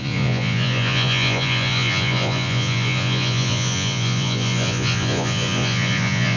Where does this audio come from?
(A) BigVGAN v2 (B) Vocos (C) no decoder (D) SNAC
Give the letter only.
B